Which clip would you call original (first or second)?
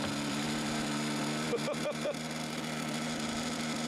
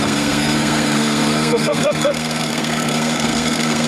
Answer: first